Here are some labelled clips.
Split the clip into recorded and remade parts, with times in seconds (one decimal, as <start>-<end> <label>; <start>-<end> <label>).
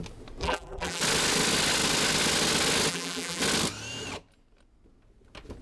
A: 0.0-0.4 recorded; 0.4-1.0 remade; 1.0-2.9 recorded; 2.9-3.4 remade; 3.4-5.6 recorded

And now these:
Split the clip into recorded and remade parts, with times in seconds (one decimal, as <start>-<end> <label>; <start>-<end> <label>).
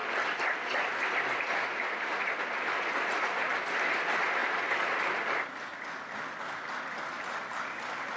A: 0.0-1.4 remade; 1.4-4.4 recorded; 4.4-5.5 remade; 5.5-8.2 recorded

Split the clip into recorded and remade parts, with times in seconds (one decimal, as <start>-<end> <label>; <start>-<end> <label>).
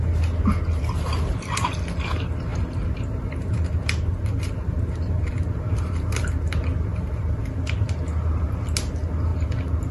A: 0.0-2.5 recorded; 2.5-6.3 remade; 6.3-6.9 recorded; 6.9-7.4 remade; 7.4-9.9 recorded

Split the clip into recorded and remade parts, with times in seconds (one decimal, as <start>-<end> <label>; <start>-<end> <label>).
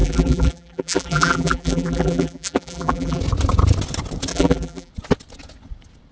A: 0.0-3.2 remade; 3.2-4.3 recorded; 4.3-4.9 remade; 4.9-6.1 recorded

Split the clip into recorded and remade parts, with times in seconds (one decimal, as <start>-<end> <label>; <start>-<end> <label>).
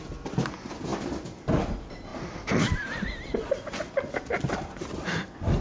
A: 0.0-2.1 recorded; 2.1-3.7 remade; 3.7-5.6 recorded